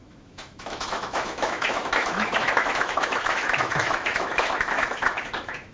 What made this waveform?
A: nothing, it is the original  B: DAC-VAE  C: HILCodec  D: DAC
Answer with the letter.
B